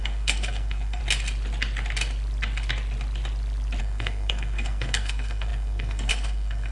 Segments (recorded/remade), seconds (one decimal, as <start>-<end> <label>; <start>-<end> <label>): 0.0-1.0 remade; 1.0-3.8 recorded; 3.8-6.7 remade